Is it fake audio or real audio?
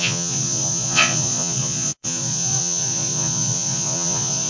fake